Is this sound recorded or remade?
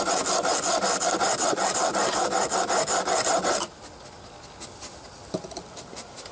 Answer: recorded